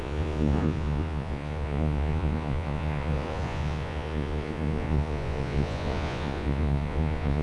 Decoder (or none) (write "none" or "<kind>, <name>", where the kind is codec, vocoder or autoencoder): vocoder, Vocos